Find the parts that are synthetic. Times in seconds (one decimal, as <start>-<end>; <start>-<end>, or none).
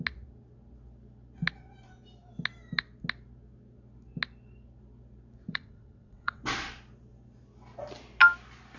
5.5-6.4